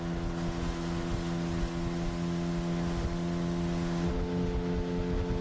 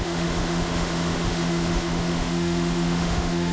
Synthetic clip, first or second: second